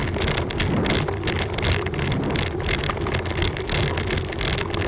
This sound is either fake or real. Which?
real